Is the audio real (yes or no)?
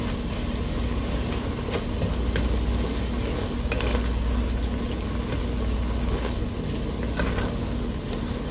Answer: yes